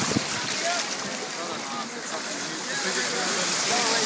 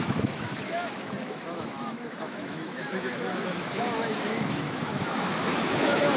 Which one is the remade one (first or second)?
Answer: second